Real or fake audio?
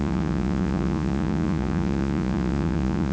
fake